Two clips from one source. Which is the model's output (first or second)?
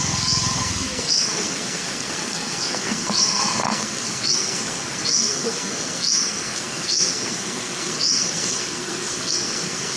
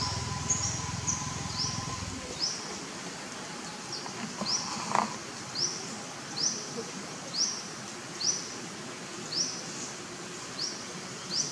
first